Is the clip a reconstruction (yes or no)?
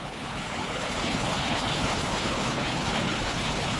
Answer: yes